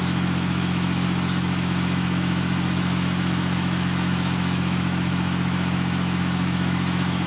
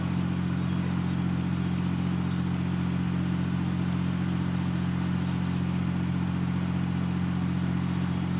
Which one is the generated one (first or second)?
first